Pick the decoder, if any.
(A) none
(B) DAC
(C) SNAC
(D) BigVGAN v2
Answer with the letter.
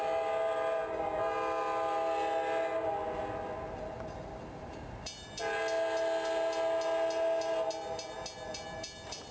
A